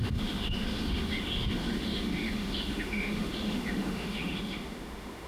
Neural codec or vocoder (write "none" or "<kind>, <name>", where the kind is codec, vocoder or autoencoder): autoencoder, DAC-VAE